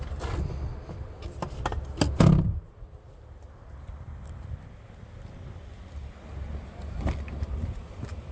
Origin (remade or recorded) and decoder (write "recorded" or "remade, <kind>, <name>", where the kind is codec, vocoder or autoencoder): recorded